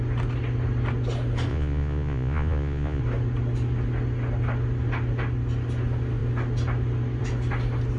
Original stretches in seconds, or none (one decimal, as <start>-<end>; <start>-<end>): 0.0-1.5; 3.0-8.0